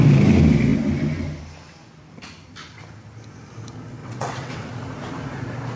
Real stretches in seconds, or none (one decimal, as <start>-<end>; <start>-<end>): 0.0-4.0; 4.7-5.8